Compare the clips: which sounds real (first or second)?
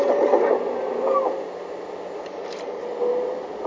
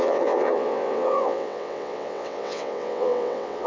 first